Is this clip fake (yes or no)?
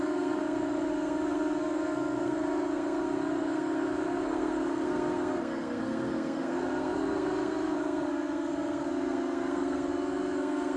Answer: yes